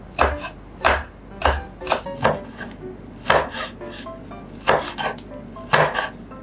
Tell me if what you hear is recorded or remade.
recorded